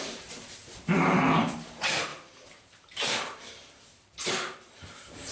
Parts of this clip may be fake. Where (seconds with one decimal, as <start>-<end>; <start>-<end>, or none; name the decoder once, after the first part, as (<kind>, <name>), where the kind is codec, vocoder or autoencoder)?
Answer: 0.0-5.3 (vocoder, BigVGAN v2)